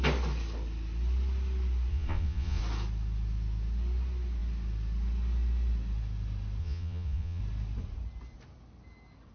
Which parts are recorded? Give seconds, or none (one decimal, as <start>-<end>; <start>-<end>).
0.0-1.9; 2.6-6.6; 7.4-9.3